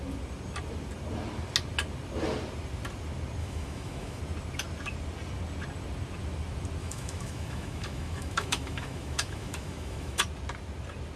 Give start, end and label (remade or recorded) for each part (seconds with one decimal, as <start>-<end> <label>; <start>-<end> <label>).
0.0-3.4 recorded; 3.4-4.2 remade; 4.2-6.8 recorded; 6.8-10.2 remade; 10.2-11.2 recorded